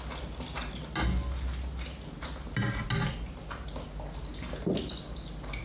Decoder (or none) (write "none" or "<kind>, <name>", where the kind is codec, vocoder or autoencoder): none